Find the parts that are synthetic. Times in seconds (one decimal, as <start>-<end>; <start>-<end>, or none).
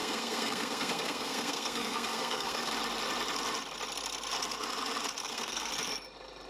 0.0-2.7; 5.2-5.7